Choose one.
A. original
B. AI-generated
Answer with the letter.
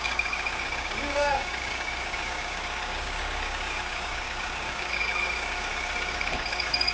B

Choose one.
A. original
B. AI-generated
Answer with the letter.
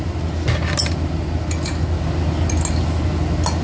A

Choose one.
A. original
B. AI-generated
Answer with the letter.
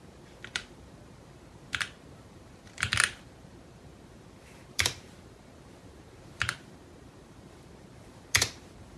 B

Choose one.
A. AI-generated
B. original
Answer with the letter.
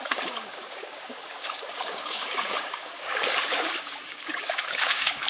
A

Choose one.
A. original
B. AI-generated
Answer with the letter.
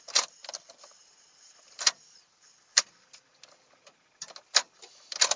B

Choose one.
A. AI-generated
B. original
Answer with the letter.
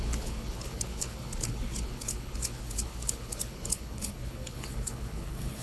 A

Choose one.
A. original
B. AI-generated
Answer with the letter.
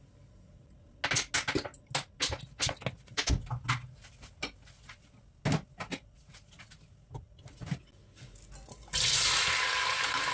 A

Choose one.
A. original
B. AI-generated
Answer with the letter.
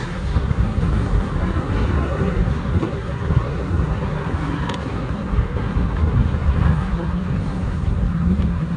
B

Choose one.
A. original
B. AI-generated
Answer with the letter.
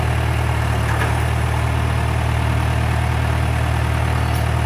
A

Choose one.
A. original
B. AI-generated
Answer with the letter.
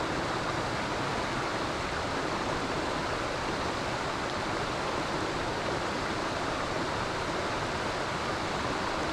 A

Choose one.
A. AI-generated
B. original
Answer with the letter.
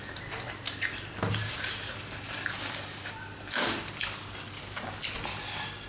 B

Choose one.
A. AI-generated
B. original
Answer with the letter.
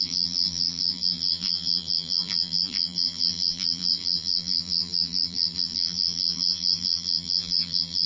A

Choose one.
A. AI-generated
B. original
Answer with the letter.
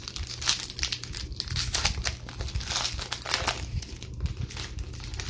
B